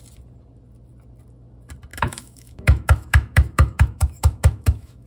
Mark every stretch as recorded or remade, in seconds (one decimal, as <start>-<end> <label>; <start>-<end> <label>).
0.0-1.9 recorded; 1.9-5.1 remade